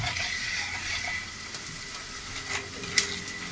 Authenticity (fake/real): real